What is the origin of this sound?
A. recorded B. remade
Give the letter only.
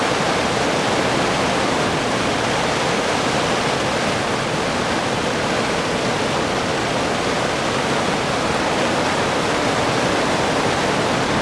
A